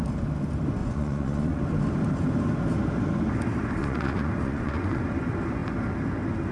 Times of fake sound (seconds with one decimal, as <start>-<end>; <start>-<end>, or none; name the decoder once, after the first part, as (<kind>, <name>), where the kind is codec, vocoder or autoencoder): 0.8-1.6 (vocoder, Vocos); 3.8-5.0